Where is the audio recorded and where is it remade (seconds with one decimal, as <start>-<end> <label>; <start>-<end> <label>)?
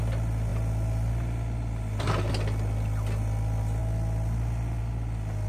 0.0-5.5 recorded